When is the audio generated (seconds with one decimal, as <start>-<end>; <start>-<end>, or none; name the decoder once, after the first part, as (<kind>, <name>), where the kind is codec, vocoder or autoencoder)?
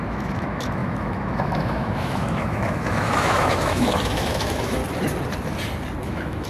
0.0-4.8 (autoencoder, DAC-VAE); 6.0-6.5